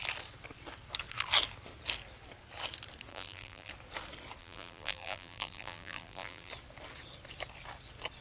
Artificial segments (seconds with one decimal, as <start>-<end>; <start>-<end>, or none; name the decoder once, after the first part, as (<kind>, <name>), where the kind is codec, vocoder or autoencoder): 3.1-3.7 (vocoder, BigVGAN v2); 4.4-6.5